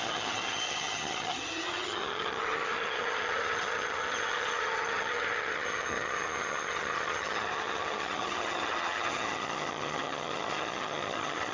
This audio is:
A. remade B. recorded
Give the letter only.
A